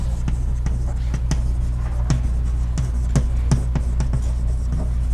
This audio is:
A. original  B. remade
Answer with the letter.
A